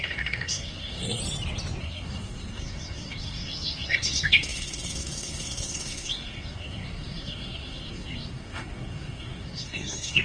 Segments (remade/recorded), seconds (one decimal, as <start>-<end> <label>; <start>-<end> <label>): 0.0-1.2 remade; 1.2-1.8 recorded; 1.8-10.2 remade